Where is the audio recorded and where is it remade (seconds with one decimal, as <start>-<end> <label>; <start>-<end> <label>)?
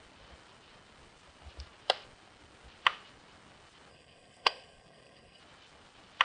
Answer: 0.0-3.9 recorded; 3.9-5.4 remade; 5.4-6.2 recorded